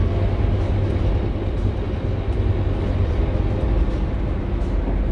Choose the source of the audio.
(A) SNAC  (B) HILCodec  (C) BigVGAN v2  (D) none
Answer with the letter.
D